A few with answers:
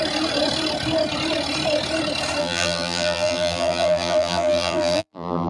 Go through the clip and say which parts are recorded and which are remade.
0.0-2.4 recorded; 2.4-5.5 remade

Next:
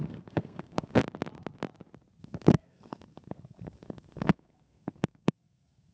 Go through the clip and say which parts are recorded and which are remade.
0.0-1.0 remade; 1.0-2.2 recorded; 2.2-5.9 remade

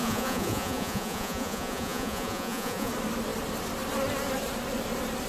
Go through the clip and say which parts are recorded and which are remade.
0.0-2.9 remade; 2.9-5.3 recorded

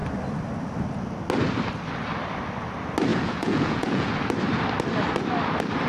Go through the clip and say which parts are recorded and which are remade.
0.0-3.1 recorded; 3.1-4.1 remade; 4.1-5.9 recorded

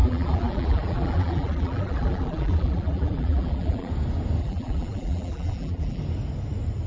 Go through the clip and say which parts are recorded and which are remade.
0.0-3.9 remade; 3.9-4.4 recorded; 4.4-6.0 remade; 6.0-6.9 recorded